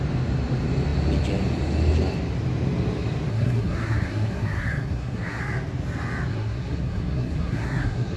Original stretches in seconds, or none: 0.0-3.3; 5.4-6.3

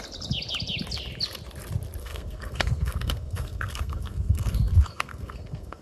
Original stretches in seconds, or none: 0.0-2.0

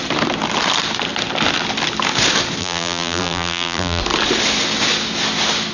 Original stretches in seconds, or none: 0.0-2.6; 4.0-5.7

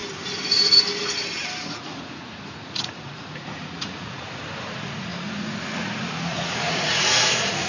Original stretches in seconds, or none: 0.0-1.7

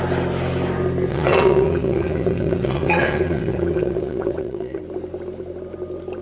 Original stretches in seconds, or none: 0.0-1.1; 4.8-6.2

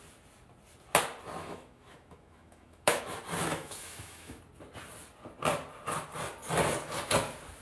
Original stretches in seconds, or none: 0.0-1.4; 3.0-3.5; 4.4-7.6